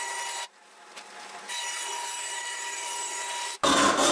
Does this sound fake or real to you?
real